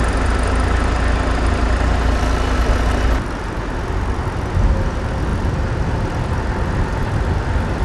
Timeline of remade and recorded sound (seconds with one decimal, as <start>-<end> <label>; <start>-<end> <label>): 0.0-7.8 recorded